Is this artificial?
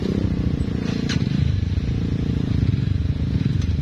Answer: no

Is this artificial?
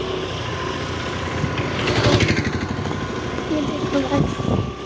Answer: no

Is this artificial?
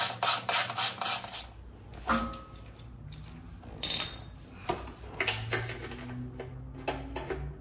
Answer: no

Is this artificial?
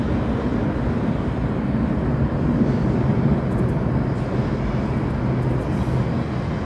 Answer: no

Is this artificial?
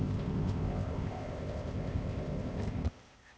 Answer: yes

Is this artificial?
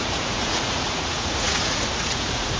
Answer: yes